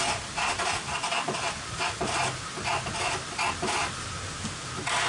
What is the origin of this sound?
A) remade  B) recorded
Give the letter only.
B